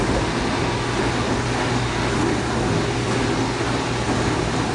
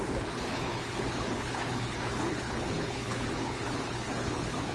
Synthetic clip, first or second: second